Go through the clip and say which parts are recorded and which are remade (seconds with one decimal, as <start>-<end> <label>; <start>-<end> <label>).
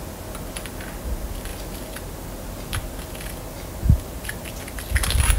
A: 0.0-5.4 recorded